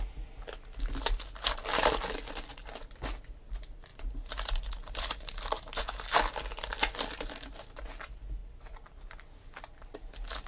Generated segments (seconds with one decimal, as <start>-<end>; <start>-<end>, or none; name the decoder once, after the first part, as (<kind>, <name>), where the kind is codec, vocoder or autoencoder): 3.9-5.8 (vocoder, BigVGAN v2); 8.4-10.1